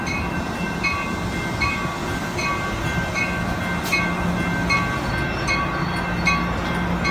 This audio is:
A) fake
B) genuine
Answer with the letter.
B